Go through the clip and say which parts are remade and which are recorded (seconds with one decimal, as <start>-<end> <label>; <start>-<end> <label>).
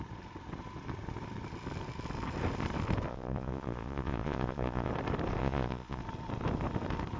0.0-3.1 recorded; 3.1-4.9 remade; 4.9-5.4 recorded; 5.4-6.0 remade; 6.0-7.2 recorded